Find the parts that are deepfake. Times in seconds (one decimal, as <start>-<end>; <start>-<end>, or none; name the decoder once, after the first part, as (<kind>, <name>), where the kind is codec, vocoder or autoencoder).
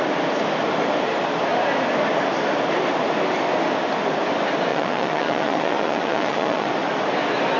4.7-6.7 (vocoder, Vocos)